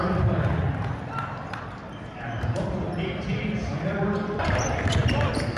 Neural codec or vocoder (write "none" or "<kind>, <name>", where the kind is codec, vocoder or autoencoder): vocoder, BigVGAN v2